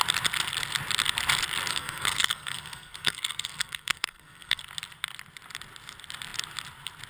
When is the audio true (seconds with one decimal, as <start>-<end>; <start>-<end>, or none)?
0.0-1.7; 4.6-7.1